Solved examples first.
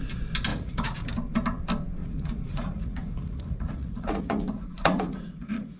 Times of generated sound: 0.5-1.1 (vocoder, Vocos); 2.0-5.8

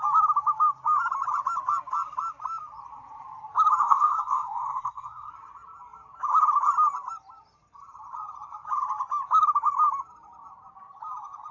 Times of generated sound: 3.8-5.3 (codec, SNAC)